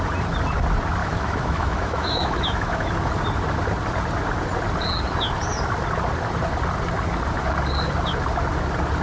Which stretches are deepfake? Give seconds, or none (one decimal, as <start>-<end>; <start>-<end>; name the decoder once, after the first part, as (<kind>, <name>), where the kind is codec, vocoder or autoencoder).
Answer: 1.0-2.9 (autoencoder, DAC-VAE)